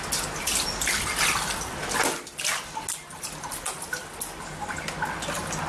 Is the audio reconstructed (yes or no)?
no